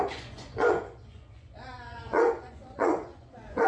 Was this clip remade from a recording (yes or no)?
yes